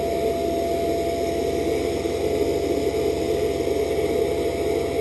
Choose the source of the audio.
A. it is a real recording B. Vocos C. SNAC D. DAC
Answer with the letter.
A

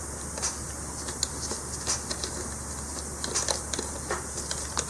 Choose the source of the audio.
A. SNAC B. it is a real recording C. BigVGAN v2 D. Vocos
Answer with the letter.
B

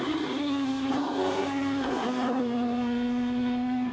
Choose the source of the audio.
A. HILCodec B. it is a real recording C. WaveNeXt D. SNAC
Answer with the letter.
D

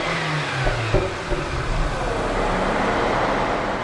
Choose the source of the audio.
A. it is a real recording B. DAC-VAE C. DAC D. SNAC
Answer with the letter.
A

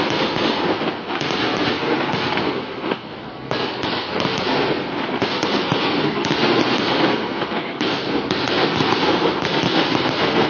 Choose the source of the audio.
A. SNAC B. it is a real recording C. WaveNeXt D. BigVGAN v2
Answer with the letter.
A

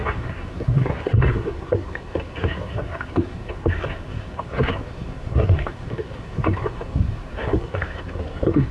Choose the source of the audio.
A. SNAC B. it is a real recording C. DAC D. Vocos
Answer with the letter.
A